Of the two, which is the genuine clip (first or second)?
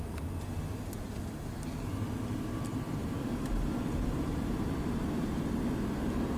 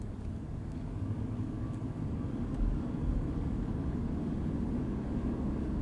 first